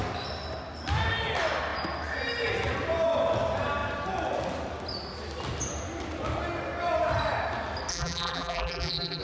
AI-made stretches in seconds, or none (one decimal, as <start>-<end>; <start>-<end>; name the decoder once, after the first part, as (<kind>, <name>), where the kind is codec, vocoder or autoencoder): 7.9-9.2 (vocoder, BigVGAN v2)